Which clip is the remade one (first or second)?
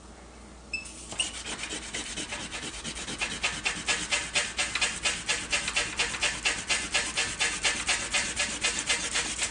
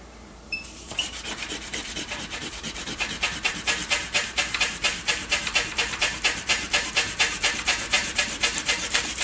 second